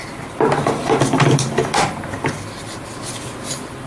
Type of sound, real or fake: real